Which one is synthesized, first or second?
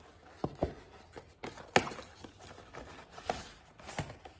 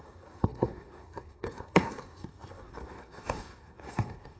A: second